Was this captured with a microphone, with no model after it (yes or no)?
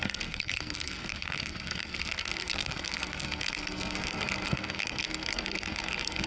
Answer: no